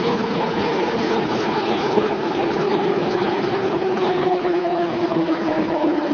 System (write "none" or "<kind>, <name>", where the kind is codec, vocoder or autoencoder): codec, HILCodec